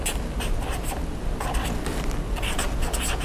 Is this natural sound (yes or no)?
yes